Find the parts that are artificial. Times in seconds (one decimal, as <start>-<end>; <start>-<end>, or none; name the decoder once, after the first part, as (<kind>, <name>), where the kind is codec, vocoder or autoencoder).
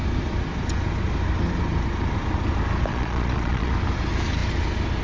2.9-3.7 (vocoder, Vocos)